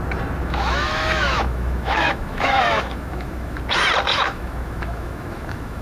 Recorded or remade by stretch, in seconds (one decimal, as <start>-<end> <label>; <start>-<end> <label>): 0.0-0.4 recorded; 0.4-3.6 remade; 3.6-4.1 recorded; 4.1-5.8 remade

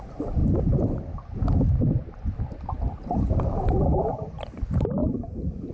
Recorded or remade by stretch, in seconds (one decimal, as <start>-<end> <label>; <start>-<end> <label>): 0.0-0.4 remade; 0.4-1.7 recorded; 1.7-5.0 remade; 5.0-5.7 recorded